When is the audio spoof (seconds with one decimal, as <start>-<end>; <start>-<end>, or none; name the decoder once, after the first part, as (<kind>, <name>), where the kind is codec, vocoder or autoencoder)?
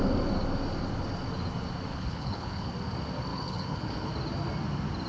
1.9-2.7 (codec, HILCodec); 3.3-4.1